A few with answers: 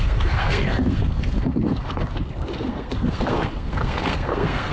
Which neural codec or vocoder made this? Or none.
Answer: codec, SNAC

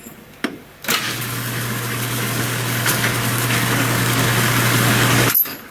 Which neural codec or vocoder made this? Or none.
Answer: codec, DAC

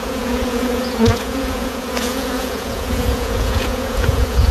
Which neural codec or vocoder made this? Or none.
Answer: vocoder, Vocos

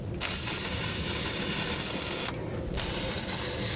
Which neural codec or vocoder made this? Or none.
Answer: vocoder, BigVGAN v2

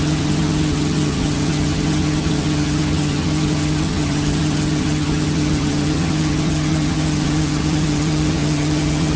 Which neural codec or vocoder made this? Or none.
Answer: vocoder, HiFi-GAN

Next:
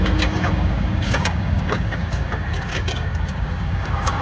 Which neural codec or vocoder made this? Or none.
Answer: codec, DAC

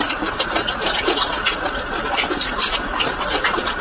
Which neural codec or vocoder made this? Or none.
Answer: none